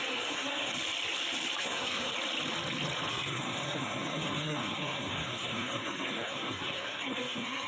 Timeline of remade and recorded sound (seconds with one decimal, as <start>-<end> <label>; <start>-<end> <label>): 0.0-0.7 remade; 0.7-1.6 recorded; 1.6-2.1 remade; 2.1-3.1 recorded; 3.1-7.7 remade